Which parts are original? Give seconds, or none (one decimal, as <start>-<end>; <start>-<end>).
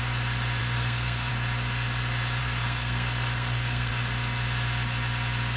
0.0-0.6; 1.3-2.4; 3.9-5.6